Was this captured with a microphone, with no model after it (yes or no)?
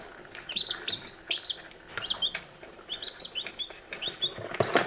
yes